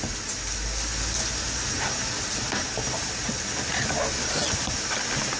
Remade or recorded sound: recorded